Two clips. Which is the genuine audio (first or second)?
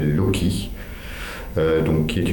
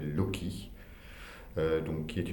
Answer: second